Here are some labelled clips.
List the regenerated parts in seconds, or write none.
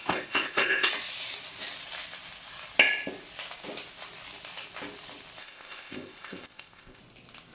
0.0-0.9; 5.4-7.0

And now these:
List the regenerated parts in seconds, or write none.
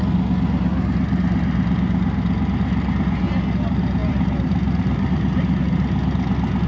4.0-5.1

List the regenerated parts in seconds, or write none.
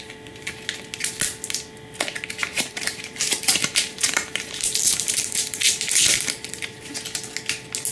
2.4-6.9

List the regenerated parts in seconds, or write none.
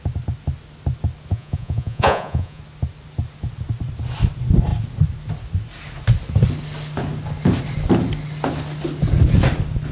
1.3-2.6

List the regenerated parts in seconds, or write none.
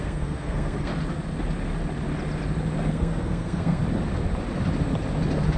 0.0-0.9; 2.9-3.8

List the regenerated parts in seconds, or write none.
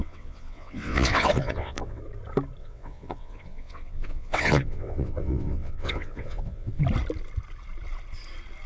0.0-2.0; 2.6-6.8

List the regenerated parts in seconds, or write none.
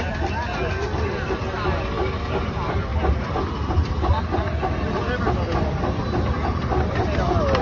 none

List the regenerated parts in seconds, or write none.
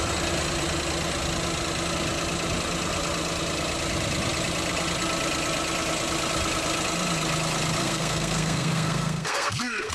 7.8-9.9